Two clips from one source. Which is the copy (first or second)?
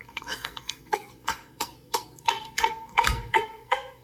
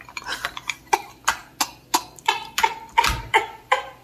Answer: first